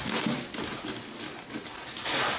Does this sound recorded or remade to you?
recorded